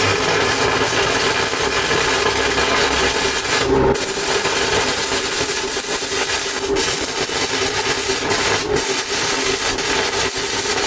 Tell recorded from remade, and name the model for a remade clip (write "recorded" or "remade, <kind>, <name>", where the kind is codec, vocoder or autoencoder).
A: recorded